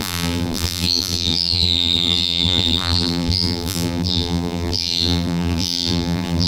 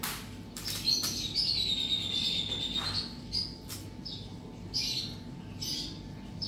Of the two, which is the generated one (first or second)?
first